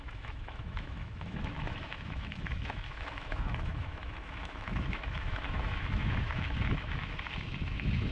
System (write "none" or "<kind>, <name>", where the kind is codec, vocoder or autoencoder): autoencoder, DAC-VAE